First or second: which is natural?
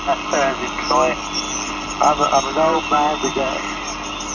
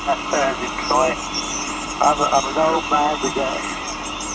first